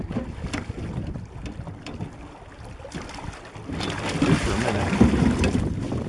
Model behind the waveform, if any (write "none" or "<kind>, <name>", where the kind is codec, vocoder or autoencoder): none